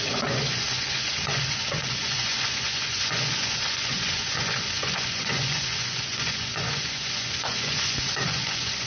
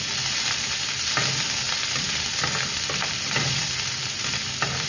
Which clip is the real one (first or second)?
second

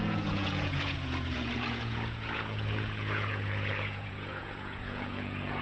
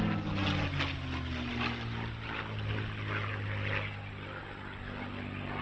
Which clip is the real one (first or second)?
second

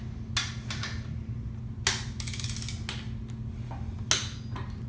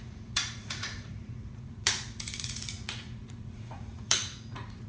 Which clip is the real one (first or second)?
first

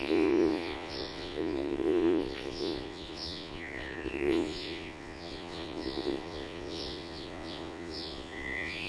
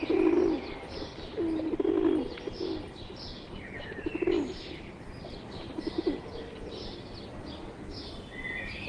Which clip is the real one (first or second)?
second